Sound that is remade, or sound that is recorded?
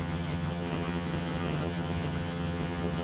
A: remade